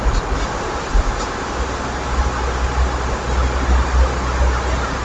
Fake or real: real